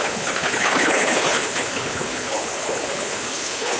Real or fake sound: fake